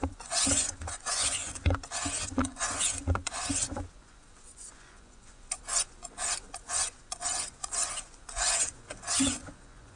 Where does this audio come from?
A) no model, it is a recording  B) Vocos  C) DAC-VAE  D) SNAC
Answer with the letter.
B